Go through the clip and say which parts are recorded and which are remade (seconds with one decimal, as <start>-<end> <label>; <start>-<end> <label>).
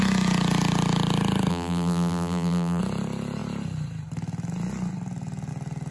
0.0-1.5 recorded; 1.5-2.8 remade; 2.8-5.9 recorded